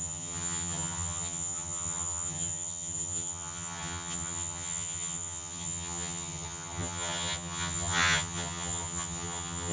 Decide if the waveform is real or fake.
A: fake